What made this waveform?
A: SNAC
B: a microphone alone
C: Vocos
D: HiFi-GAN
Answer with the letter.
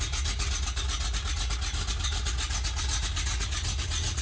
B